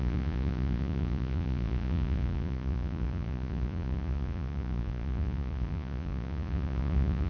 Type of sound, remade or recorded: remade